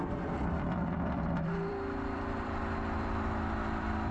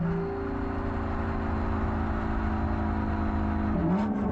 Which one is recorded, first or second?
second